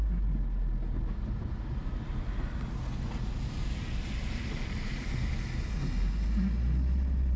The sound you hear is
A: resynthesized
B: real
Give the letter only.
B